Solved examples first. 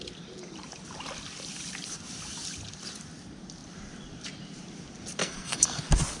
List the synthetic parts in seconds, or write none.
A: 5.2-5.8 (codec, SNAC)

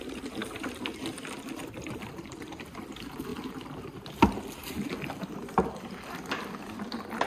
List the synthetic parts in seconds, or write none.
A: none

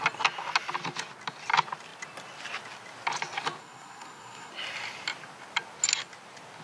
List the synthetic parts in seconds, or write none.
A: 3.6-4.5 (codec, SNAC)

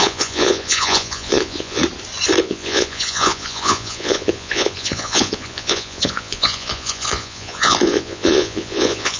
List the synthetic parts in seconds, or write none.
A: 0.0-1.8 (vocoder, Vocos); 2.4-9.2